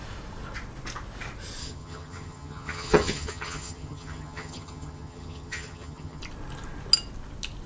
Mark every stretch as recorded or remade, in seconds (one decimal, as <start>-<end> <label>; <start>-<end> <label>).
0.0-1.6 recorded; 1.6-6.2 remade; 6.2-7.7 recorded